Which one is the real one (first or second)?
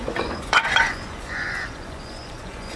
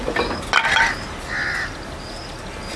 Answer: second